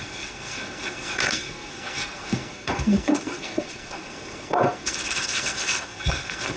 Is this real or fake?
fake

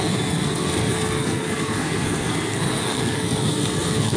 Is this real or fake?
fake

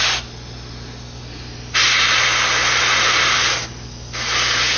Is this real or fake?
real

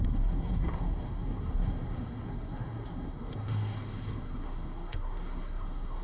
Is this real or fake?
fake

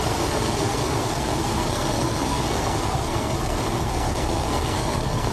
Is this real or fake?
fake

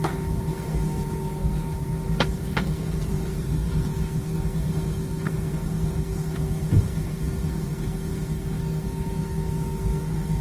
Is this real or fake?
fake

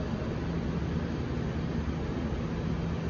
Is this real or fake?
real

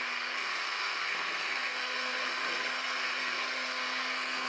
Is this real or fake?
fake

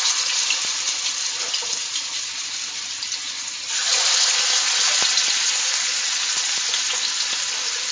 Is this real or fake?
real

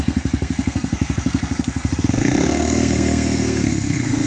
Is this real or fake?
fake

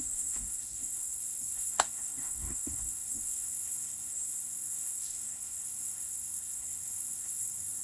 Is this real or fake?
fake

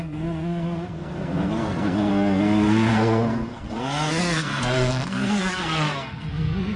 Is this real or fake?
fake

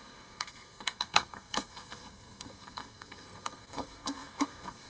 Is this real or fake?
fake